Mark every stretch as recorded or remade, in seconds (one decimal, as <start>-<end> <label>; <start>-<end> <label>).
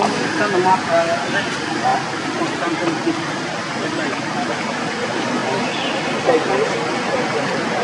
0.0-7.8 recorded